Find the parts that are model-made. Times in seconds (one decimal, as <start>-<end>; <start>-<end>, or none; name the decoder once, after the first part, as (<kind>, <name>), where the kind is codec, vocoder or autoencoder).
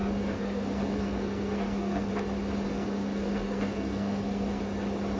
0.0-2.1 (codec, SNAC); 2.7-4.6